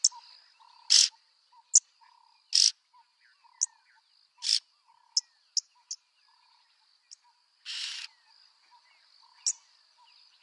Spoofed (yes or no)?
no